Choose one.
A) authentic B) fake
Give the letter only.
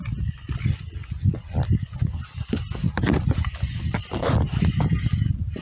A